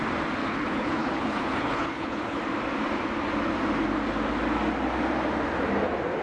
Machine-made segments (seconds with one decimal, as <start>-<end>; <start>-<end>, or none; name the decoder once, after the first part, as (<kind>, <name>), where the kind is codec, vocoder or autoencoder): 0.4-2.4 (codec, HILCodec)